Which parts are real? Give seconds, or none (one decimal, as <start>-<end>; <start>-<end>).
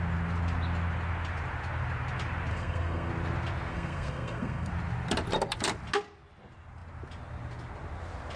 0.0-2.5; 3.1-3.7; 4.7-8.4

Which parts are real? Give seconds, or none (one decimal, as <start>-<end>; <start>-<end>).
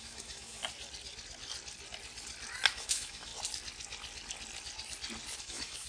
0.6-2.7; 3.3-5.4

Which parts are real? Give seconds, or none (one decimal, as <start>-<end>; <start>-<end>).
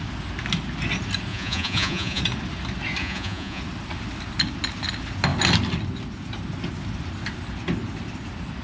0.0-1.3; 2.2-3.0; 3.6-8.6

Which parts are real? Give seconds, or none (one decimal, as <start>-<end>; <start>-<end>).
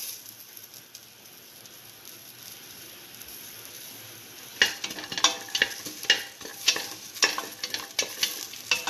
0.0-2.2; 3.9-6.5; 7.1-8.9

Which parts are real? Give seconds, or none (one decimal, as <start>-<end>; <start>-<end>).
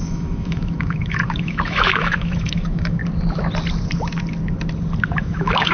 3.0-5.2